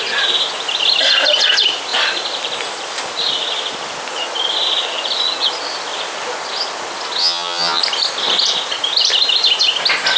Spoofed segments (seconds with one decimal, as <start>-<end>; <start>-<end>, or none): 7.2-7.8